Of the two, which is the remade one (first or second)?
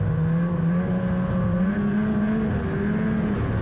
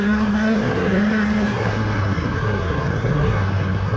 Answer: second